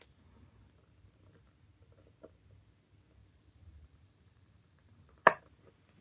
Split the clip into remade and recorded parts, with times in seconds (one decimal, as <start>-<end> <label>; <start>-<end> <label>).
0.0-3.2 recorded; 3.2-5.4 remade; 5.4-6.0 recorded